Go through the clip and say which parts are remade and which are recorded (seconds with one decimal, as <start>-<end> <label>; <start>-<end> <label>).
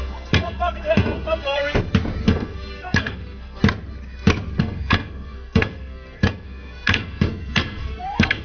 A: 0.0-1.6 remade; 1.6-2.2 recorded; 2.2-3.6 remade; 3.6-4.6 recorded; 4.6-8.4 remade